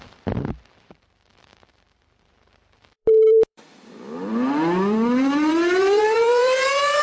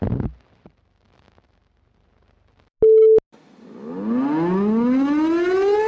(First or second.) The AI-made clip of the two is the first